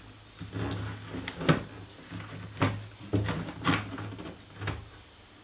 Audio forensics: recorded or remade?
recorded